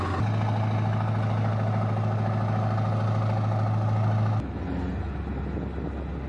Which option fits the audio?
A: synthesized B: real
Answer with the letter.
B